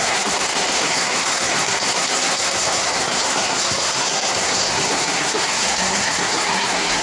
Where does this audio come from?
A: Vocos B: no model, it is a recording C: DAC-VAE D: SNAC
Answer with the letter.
D